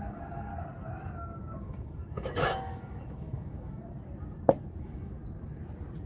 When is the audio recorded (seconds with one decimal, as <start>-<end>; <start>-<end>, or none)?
0.5-1.6; 3.8-4.8; 5.2-6.1